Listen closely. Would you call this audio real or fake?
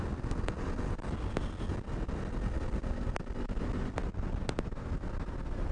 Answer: real